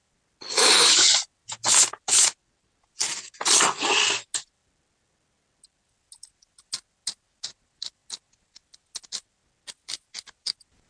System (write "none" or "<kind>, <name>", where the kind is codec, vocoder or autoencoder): none